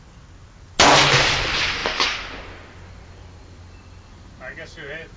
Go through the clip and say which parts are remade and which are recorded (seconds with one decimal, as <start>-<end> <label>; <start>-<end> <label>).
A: 0.0-5.2 recorded